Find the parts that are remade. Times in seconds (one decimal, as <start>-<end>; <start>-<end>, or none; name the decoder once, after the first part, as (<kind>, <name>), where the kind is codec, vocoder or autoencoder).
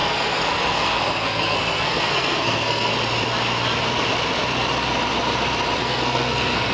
0.0-2.9 (codec, SNAC); 5.8-6.7